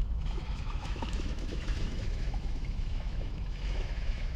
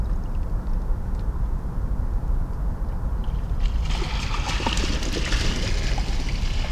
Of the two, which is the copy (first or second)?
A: first